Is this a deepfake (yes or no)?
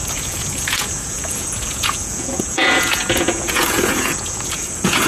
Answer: yes